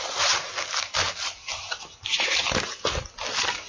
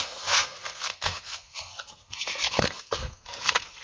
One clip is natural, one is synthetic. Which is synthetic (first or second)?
second